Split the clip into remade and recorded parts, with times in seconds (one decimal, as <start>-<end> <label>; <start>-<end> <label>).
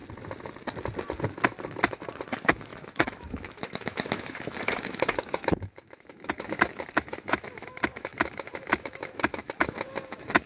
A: 0.0-2.3 recorded; 2.3-10.5 remade